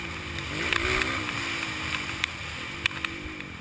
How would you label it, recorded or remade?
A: recorded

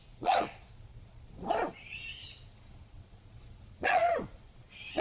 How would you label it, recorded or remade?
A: remade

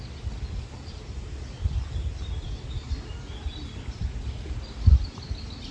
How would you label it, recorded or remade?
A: recorded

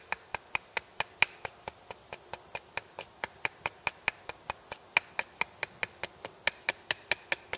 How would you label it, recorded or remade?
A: recorded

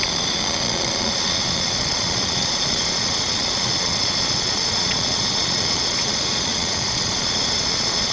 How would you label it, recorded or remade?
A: remade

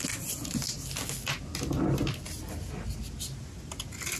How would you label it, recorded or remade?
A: recorded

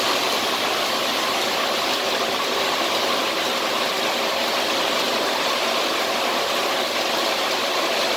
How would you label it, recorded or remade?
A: remade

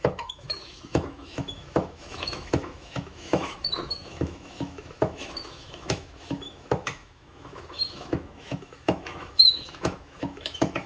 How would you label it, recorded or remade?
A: remade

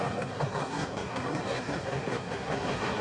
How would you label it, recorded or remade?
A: remade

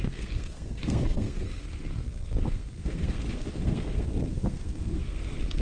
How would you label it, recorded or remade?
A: remade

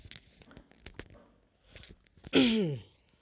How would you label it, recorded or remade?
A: recorded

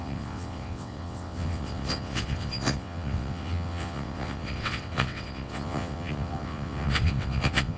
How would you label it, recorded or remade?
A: remade